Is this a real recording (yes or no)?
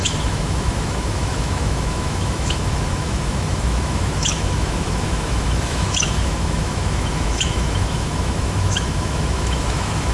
no